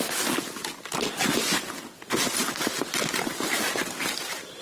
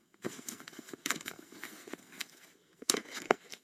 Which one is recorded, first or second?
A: first